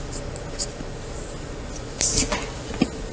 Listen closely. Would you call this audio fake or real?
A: fake